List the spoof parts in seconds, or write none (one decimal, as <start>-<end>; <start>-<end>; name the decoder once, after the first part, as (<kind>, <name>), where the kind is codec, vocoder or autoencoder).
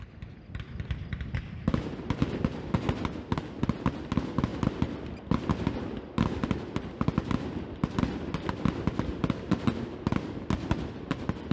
none